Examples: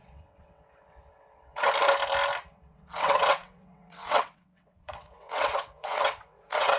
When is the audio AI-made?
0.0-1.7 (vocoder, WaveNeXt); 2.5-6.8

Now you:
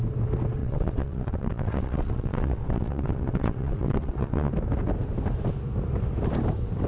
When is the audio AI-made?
0.6-4.5 (vocoder, WaveNeXt)

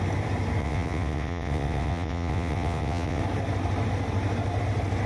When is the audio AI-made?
0.6-3.2 (vocoder, WaveNeXt)

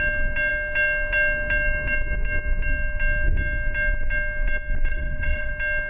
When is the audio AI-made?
4.9-5.5 (vocoder, WaveNeXt)

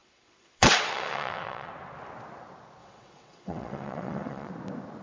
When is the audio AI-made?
0.0-1.7 (vocoder, WaveNeXt); 2.8-4.5

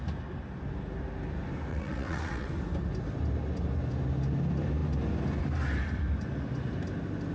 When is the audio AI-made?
1.7-2.5 (vocoder, WaveNeXt)

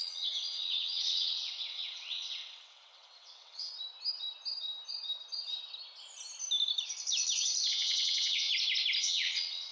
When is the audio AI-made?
0.0-3.7 (vocoder, WaveNeXt); 7.7-8.5; 9.0-9.7

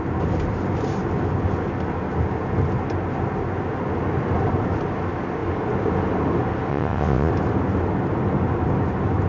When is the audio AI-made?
6.7-7.3 (vocoder, WaveNeXt)